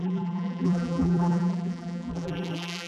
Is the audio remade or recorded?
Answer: remade